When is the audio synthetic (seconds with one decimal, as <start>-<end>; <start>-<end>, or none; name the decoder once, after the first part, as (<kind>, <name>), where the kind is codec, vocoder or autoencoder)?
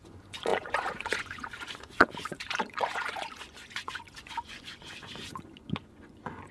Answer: 0.0-6.5 (vocoder, Vocos)